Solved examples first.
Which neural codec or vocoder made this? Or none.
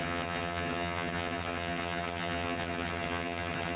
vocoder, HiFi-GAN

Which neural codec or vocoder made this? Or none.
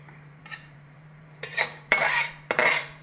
vocoder, BigVGAN v2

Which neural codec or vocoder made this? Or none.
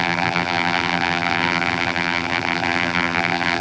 vocoder, BigVGAN v2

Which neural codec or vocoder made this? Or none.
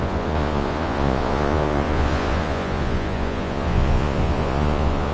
vocoder, Vocos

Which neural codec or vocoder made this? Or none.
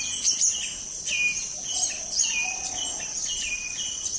none